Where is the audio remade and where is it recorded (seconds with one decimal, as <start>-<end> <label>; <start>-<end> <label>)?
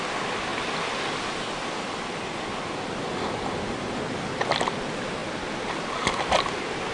0.0-6.9 recorded